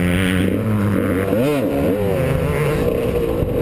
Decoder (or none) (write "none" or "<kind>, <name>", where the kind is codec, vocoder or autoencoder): none